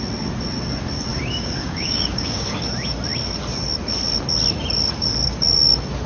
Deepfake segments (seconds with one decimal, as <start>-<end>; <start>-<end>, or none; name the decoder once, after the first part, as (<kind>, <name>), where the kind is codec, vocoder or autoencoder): 1.1-2.6 (codec, DAC)